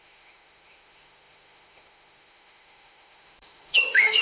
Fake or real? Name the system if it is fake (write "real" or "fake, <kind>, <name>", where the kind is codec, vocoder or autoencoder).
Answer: fake, autoencoder, DAC-VAE